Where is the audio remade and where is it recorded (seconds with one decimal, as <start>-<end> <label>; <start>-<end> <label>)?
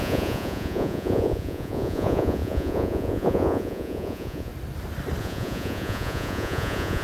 0.0-4.5 remade; 4.5-5.2 recorded; 5.2-7.0 remade